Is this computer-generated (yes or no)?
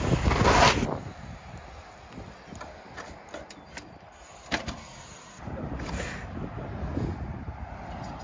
no